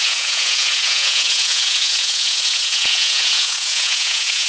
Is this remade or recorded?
remade